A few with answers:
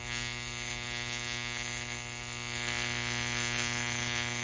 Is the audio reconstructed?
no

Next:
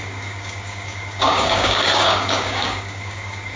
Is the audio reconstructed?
yes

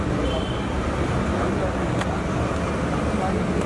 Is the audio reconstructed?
no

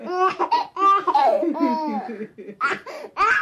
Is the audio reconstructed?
no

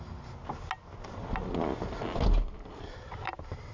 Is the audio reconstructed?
no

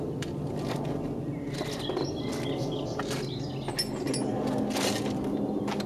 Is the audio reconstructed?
no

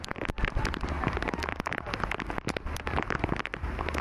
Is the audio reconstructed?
no